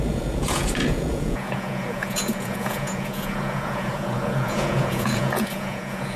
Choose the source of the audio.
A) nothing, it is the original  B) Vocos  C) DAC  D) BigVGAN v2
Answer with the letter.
B